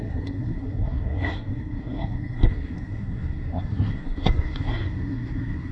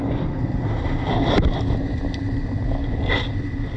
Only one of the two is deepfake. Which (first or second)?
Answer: first